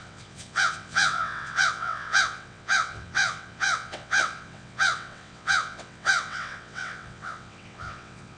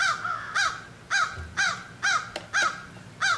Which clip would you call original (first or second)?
second